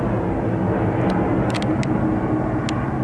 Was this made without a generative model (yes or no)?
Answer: yes